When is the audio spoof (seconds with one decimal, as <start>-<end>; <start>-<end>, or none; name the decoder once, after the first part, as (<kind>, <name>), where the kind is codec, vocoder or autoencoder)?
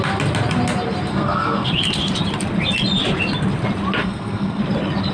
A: 1.1-1.7 (codec, SNAC); 4.0-4.6